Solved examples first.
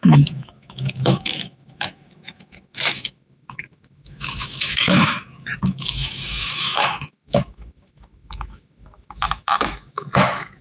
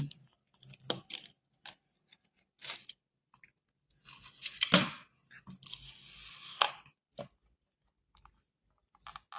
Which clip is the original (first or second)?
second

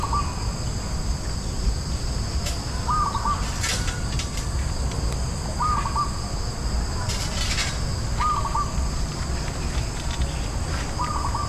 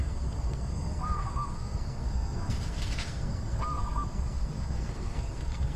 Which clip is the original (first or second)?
first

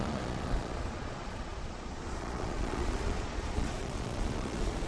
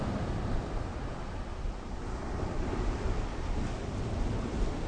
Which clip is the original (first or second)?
second